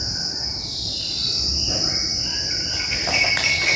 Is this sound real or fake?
real